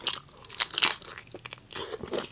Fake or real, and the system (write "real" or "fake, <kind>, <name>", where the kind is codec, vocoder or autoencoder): real